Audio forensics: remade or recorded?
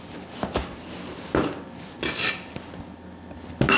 recorded